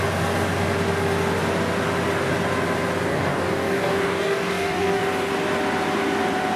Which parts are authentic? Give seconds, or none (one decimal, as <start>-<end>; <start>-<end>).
0.0-3.1; 5.0-6.6